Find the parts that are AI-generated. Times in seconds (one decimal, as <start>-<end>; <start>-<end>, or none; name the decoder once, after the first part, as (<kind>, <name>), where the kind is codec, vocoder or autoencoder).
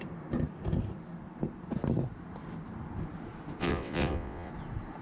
3.6-4.5 (vocoder, WaveNeXt)